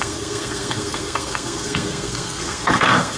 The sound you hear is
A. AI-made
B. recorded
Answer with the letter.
A